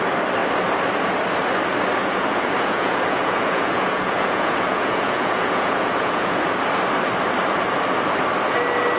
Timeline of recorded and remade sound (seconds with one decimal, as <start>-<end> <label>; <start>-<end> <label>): 0.0-2.0 recorded; 2.0-6.6 remade; 6.6-9.0 recorded